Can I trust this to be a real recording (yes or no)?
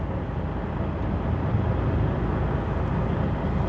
yes